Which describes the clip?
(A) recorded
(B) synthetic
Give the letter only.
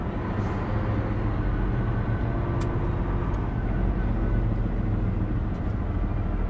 A